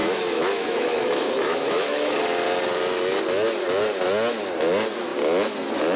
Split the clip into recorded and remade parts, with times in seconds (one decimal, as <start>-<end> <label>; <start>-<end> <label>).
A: 0.0-2.2 remade; 2.2-6.0 recorded